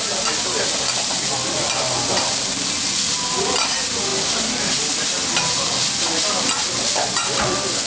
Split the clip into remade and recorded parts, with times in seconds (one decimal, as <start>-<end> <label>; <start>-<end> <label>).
0.0-7.9 recorded